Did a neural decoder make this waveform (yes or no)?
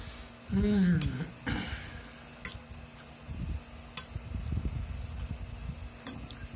no